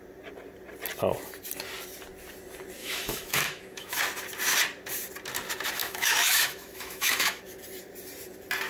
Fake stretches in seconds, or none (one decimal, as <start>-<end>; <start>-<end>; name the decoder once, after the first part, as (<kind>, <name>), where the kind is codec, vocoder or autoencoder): 2.8-4.0 (autoencoder, DAC-VAE); 5.8-7.4